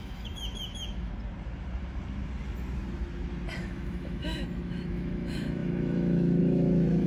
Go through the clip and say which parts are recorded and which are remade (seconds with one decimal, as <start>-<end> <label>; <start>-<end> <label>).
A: 0.0-1.1 remade; 1.1-3.6 recorded; 3.6-7.1 remade